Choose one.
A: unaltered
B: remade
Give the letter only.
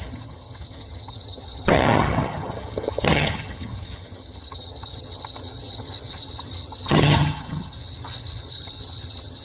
B